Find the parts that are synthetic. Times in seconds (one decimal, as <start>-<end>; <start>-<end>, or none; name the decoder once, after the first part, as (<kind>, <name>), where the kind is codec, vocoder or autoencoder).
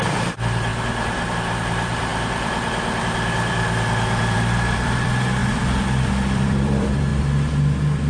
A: 0.0-0.7 (vocoder, BigVGAN v2); 1.3-7.1